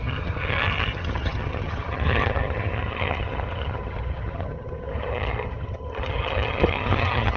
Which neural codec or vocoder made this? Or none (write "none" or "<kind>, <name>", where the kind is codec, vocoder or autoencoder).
vocoder, HiFi-GAN